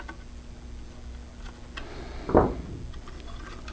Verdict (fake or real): real